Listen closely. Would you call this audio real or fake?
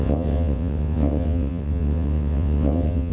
fake